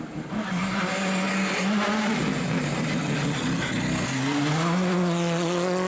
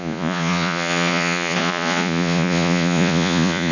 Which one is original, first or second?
first